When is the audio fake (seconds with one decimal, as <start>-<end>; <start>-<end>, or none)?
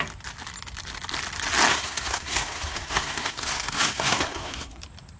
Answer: 1.7-4.8